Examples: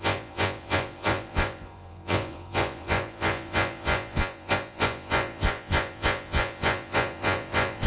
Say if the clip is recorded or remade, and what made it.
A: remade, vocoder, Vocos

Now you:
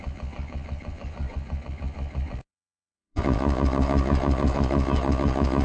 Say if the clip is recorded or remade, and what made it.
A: remade, vocoder, Vocos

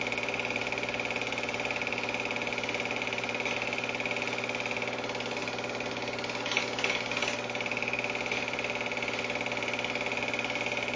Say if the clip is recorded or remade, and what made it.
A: recorded